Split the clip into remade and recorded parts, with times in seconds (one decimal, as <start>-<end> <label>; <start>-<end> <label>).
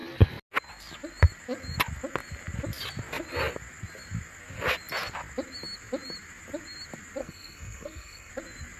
0.0-7.2 recorded; 7.2-8.3 remade; 8.3-8.8 recorded